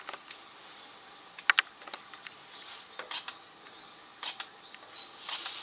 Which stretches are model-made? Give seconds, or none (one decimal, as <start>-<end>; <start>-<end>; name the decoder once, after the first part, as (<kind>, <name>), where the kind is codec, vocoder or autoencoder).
none